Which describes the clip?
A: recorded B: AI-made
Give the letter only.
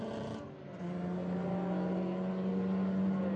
A